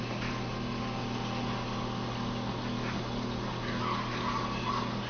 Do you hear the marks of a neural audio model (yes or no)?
no